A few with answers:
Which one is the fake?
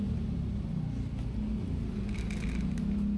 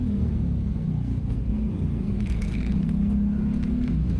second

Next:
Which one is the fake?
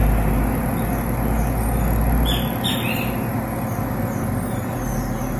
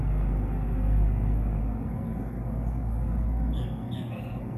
second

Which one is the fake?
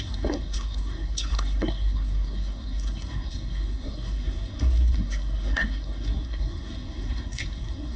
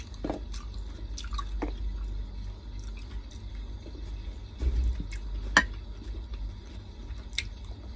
first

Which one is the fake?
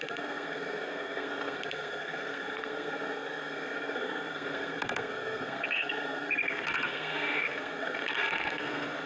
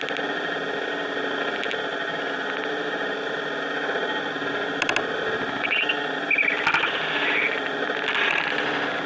first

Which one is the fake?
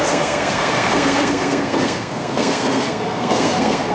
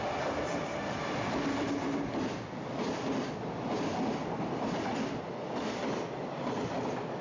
first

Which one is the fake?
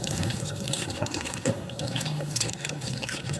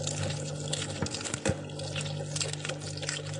first